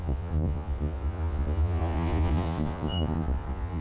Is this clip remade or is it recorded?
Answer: remade